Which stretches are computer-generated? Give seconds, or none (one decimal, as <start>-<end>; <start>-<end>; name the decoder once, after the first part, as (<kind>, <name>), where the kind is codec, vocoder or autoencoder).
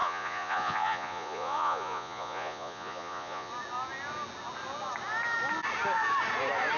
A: 0.0-3.5 (vocoder, Vocos)